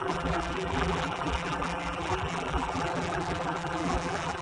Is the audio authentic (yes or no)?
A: no